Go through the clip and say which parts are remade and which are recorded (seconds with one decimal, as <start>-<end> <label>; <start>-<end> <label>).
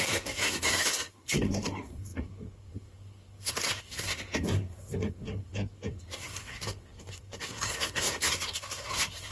0.0-9.3 remade